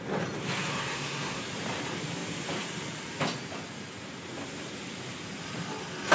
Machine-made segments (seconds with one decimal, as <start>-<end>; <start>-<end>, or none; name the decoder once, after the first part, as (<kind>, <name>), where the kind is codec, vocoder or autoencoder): 0.7-1.4 (codec, SNAC)